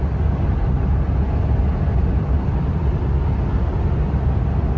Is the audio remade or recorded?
recorded